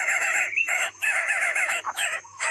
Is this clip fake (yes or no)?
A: yes